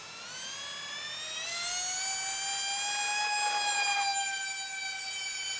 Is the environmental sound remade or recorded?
recorded